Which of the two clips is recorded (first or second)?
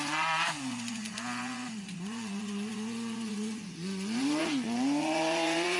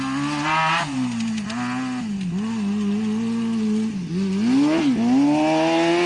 second